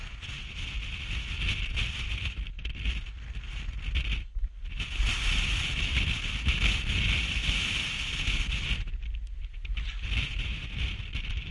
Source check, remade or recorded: recorded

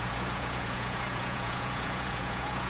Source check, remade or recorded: remade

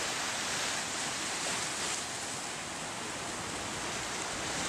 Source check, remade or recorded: recorded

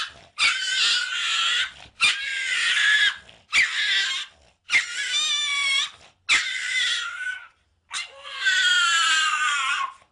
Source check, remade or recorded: recorded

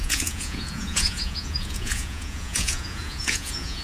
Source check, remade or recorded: remade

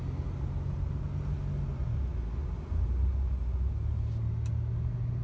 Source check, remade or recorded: recorded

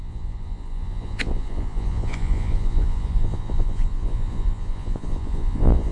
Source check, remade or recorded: remade